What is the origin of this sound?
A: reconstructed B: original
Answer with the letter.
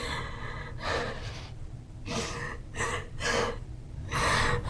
B